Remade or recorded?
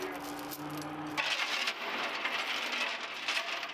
recorded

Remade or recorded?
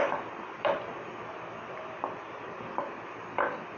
remade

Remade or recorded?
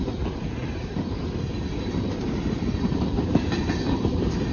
remade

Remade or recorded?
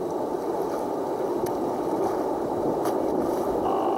recorded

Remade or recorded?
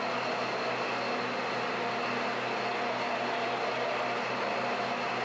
recorded